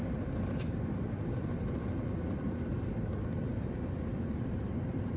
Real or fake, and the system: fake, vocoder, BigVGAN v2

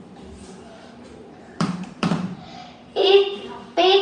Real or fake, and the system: fake, vocoder, BigVGAN v2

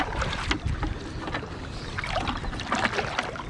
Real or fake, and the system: real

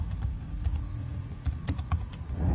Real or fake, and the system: fake, vocoder, Vocos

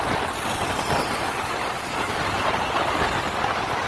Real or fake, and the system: real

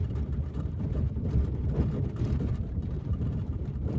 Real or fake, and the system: fake, vocoder, BigVGAN v2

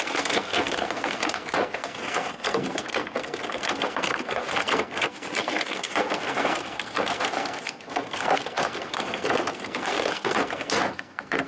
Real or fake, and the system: fake, codec, SNAC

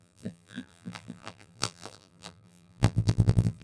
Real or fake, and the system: fake, vocoder, BigVGAN v2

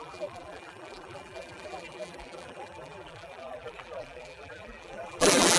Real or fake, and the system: fake, vocoder, BigVGAN v2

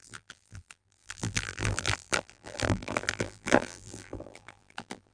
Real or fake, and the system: fake, vocoder, BigVGAN v2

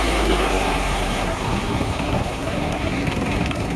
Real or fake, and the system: fake, codec, SNAC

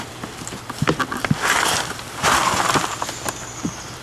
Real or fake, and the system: real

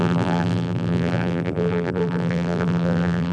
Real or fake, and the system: fake, vocoder, BigVGAN v2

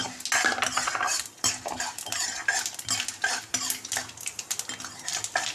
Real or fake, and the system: real